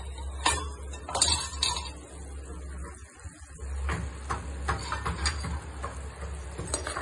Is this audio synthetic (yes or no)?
no